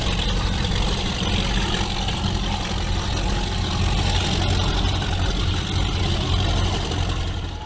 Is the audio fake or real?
real